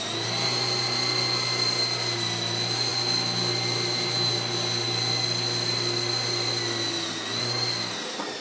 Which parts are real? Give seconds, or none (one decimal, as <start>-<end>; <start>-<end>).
0.0-8.4